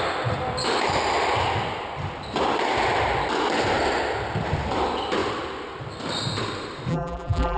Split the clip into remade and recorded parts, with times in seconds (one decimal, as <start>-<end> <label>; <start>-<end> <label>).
0.0-6.9 recorded; 6.9-7.6 remade